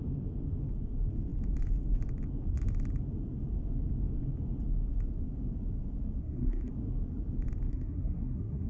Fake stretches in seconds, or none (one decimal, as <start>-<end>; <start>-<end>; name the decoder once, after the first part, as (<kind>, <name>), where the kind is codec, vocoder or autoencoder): 6.2-6.7 (codec, SNAC); 7.7-8.7